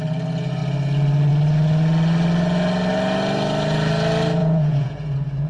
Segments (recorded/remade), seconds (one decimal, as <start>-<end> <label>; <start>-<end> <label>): 0.0-4.4 recorded; 4.4-5.5 remade